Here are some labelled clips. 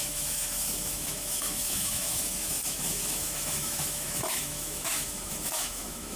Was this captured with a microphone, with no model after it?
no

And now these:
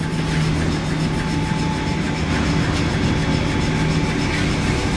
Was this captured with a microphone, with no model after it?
yes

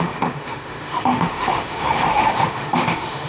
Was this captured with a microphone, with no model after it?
no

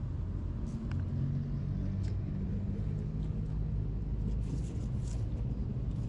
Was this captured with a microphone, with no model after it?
yes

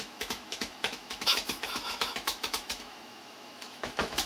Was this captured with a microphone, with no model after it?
no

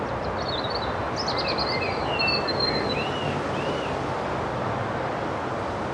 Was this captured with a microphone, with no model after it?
yes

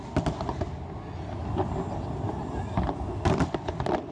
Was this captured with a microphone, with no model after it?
yes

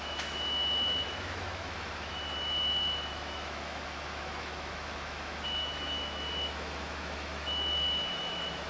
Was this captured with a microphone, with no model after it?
no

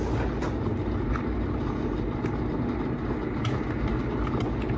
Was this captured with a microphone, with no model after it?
yes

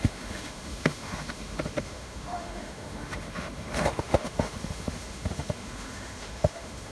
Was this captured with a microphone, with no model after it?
no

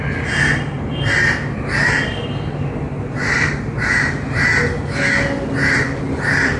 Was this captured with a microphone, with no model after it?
yes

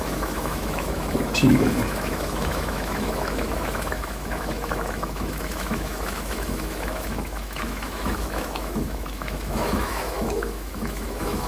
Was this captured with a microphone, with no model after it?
no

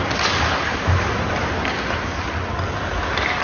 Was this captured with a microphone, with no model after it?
yes